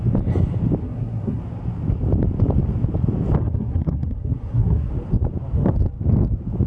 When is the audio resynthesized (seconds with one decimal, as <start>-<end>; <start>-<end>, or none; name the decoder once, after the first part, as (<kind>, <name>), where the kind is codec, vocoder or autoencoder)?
0.8-1.4 (codec, SNAC); 3.4-4.9